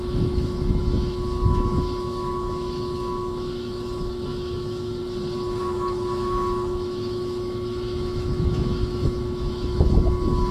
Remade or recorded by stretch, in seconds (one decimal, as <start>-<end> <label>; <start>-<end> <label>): 0.0-5.0 remade; 5.0-5.6 recorded; 5.6-10.5 remade